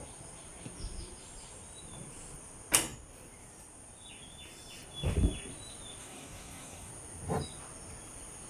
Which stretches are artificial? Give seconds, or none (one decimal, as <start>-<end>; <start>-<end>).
6.0-6.9